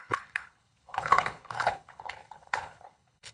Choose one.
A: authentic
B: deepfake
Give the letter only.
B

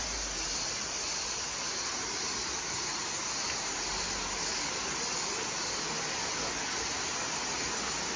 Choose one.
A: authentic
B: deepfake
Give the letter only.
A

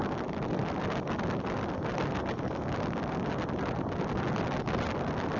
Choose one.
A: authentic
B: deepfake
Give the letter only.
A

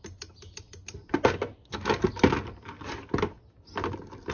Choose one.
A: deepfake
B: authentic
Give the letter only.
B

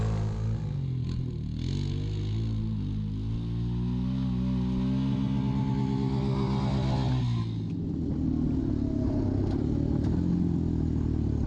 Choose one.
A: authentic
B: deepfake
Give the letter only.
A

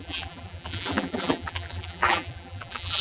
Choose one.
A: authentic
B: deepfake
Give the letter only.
B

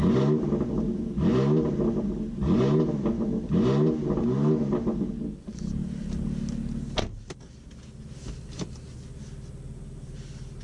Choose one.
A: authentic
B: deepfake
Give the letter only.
A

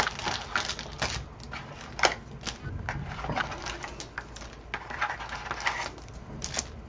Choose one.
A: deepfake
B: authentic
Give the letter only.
B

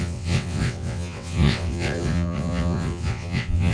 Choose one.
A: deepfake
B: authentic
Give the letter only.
A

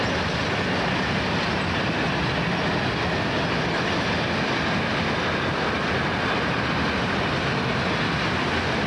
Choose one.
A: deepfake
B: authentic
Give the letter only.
B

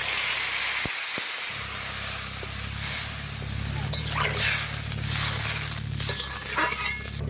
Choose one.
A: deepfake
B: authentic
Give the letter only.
B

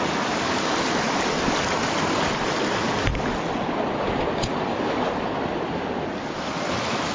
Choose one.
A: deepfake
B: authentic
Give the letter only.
B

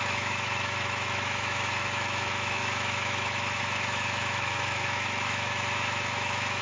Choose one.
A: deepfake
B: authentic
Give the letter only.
A